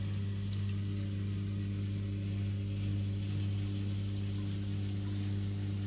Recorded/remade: recorded